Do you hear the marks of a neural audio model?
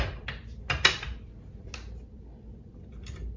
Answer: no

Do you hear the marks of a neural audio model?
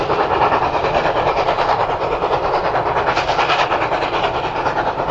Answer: yes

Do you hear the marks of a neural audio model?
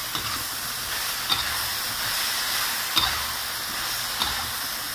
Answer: no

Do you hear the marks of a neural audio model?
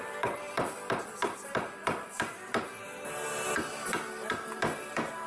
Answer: yes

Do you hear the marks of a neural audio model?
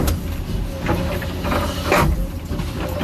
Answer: no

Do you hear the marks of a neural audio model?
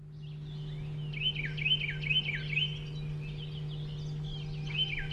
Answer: no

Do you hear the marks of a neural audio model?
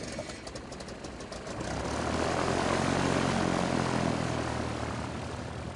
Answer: no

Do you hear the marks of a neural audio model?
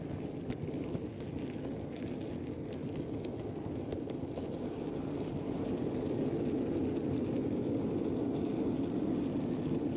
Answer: no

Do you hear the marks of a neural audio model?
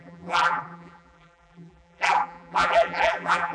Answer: yes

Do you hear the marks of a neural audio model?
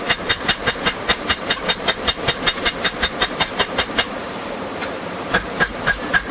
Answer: yes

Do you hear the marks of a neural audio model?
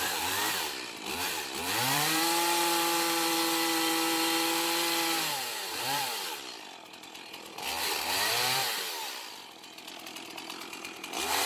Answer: yes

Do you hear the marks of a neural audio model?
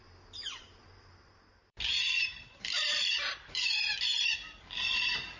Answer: yes